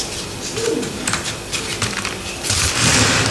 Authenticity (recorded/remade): recorded